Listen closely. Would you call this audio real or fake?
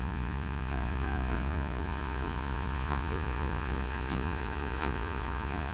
fake